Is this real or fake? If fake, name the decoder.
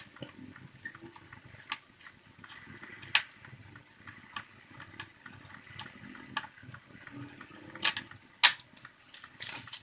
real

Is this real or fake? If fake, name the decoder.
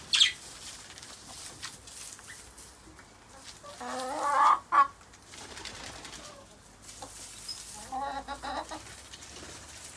real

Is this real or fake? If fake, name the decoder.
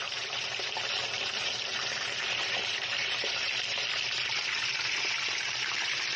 fake, vocoder, BigVGAN v2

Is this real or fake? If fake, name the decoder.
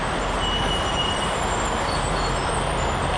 real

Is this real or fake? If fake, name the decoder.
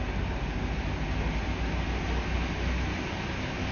real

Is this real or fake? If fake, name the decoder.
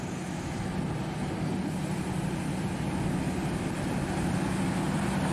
real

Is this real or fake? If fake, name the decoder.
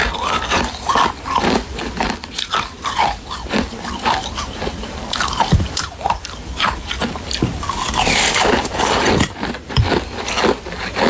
fake, vocoder, BigVGAN v2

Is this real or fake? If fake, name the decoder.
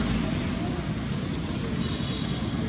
real